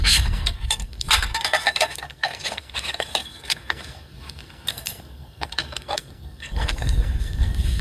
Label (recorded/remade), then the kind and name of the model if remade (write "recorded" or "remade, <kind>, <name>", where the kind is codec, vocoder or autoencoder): remade, codec, SNAC